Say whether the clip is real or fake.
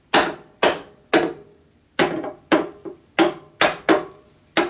real